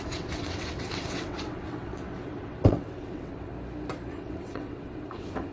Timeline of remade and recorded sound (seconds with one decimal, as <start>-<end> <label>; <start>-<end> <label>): 0.0-3.5 remade; 3.5-4.1 recorded; 4.1-5.5 remade